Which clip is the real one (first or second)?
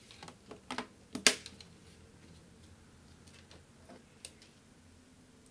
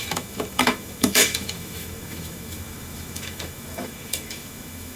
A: first